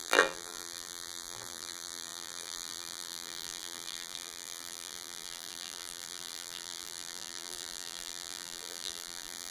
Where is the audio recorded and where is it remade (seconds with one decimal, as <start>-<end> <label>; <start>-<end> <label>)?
0.0-9.5 remade